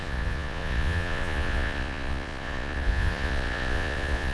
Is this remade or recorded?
remade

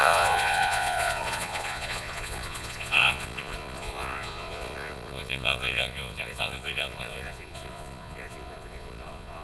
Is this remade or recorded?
remade